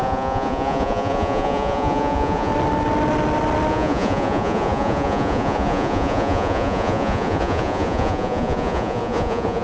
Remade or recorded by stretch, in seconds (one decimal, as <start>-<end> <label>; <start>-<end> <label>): 0.0-2.5 remade; 2.5-3.7 recorded; 3.7-9.6 remade